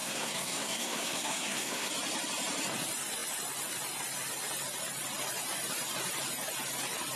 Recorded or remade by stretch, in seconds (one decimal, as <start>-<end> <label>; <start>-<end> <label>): 0.0-1.9 remade; 1.9-7.2 recorded